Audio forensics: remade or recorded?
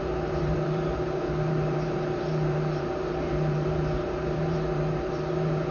remade